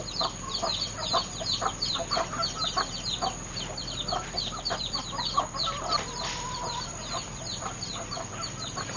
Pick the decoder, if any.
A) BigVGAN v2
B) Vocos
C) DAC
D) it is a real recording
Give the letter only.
A